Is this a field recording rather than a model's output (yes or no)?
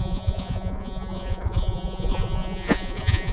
no